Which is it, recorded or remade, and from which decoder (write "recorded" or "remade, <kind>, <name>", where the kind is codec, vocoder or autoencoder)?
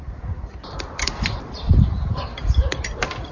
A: remade, vocoder, BigVGAN v2